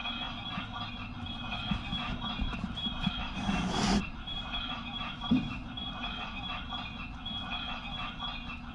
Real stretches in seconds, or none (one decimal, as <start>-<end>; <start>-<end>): 0.0-2.1; 6.5-8.7

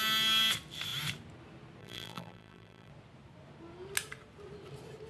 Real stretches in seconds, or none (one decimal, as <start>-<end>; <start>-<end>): 0.0-1.8; 2.9-5.1

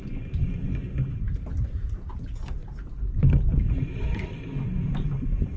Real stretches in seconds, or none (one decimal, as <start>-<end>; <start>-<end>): 0.0-1.5; 2.1-2.6; 4.4-5.6

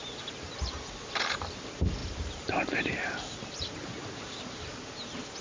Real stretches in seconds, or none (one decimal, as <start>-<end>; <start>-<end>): 0.8-2.0; 4.8-5.4